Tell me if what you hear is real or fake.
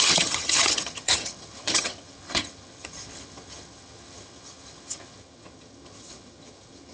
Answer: fake